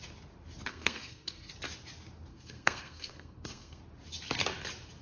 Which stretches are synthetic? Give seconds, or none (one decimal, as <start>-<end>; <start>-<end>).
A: 0.7-1.5; 2.3-3.8